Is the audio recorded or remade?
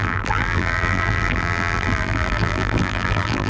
remade